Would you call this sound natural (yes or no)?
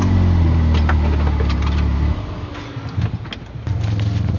yes